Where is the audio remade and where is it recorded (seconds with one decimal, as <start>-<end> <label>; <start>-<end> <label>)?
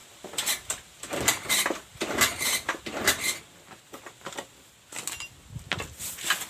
0.0-6.5 recorded